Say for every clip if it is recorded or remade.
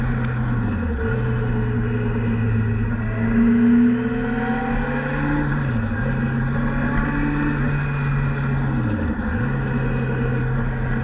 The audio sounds recorded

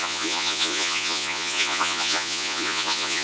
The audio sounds remade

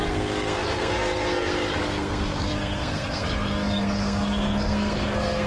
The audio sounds remade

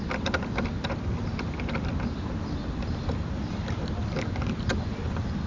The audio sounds recorded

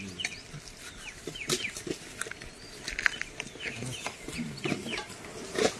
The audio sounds recorded